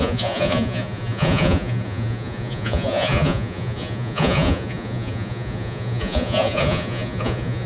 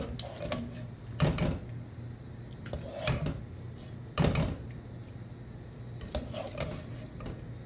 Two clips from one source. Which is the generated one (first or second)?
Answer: first